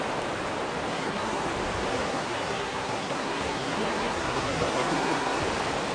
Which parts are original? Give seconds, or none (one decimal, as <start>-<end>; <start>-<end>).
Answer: 0.0-0.9; 1.5-1.9; 5.4-5.9